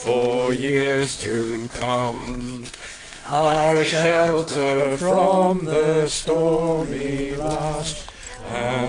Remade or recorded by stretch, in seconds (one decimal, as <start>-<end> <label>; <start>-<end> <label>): 0.0-0.7 recorded; 0.7-4.8 remade; 4.8-8.9 recorded

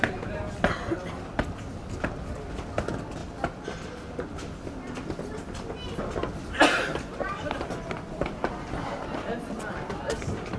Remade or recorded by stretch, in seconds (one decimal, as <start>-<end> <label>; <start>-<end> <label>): 0.0-10.6 recorded

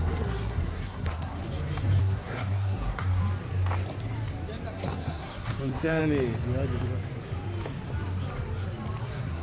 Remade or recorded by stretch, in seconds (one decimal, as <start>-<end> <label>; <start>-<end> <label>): 0.0-1.4 remade; 1.4-2.0 recorded; 2.0-3.2 remade; 3.2-4.7 recorded; 4.7-6.0 remade; 6.0-9.0 recorded; 9.0-9.4 remade

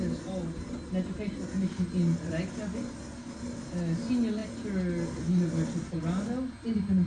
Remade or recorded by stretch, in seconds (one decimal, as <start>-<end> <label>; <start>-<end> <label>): 0.0-7.1 recorded

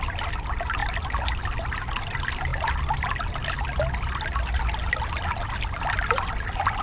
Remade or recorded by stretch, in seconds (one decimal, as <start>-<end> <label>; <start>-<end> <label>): 0.0-6.8 recorded

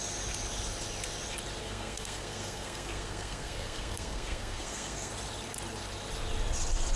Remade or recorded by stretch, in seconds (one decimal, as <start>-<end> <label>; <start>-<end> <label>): 0.0-1.6 recorded; 1.6-5.1 remade; 5.1-7.0 recorded

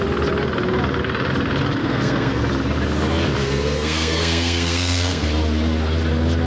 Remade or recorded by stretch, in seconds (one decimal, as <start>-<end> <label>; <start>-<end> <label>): 0.0-1.8 recorded; 1.8-2.4 remade; 2.4-3.4 recorded; 3.4-5.3 remade; 5.3-6.5 recorded